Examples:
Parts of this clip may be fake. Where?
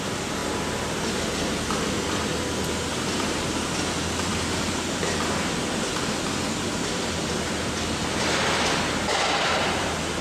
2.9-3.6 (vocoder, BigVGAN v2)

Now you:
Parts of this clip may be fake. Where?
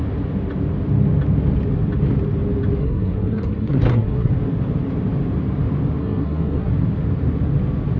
2.8-4.3 (codec, SNAC); 6.0-6.7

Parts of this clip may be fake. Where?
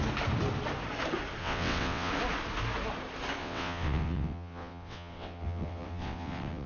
1.4-2.1 (vocoder, WaveNeXt); 3.4-6.7